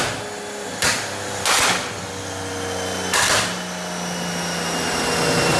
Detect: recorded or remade recorded